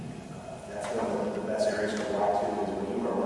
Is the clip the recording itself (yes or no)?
no